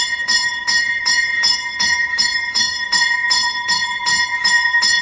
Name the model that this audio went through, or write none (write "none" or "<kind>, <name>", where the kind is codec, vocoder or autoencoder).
vocoder, Vocos